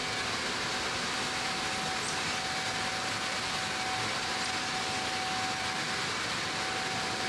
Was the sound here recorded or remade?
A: recorded